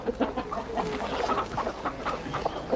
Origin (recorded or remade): recorded